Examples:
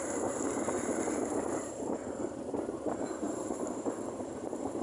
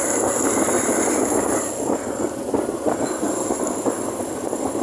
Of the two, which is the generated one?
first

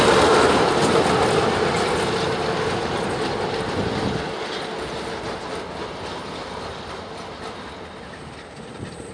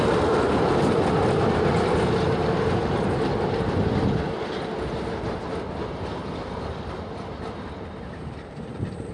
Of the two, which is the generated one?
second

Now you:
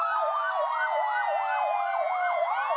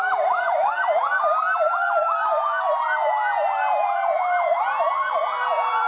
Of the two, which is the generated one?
second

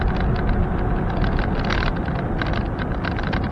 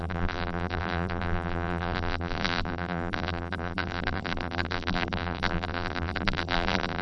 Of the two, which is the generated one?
second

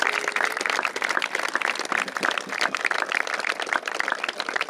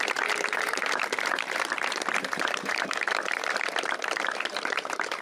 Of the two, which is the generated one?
second